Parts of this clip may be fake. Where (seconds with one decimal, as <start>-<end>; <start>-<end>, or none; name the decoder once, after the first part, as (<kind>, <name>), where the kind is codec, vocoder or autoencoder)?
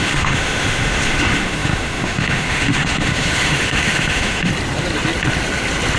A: 0.0-4.5 (autoencoder, DAC-VAE)